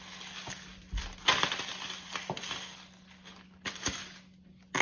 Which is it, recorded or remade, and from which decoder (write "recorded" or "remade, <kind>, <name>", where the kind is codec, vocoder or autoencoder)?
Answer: recorded